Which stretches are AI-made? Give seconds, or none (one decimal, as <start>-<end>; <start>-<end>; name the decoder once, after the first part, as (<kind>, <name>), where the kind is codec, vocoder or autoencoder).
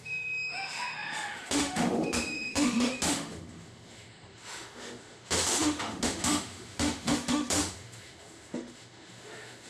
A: 0.0-9.7 (autoencoder, DAC-VAE)